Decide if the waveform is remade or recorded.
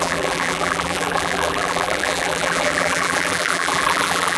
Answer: remade